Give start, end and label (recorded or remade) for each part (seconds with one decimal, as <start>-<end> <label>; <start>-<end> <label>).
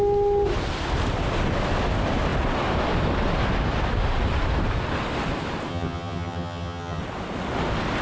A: 0.0-5.7 recorded; 5.7-7.0 remade; 7.0-8.0 recorded